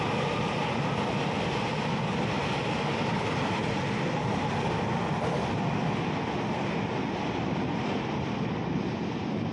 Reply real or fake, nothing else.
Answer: real